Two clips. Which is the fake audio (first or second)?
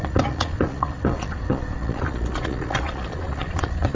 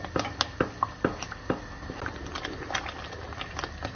first